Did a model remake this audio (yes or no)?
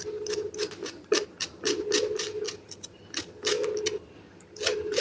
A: no